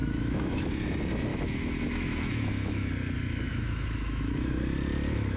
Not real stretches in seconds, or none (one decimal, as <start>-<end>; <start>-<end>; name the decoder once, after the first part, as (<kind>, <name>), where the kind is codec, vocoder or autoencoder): 0.0-0.7 (autoencoder, DAC-VAE); 1.3-2.9; 3.5-4.3